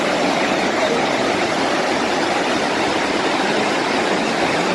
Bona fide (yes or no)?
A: no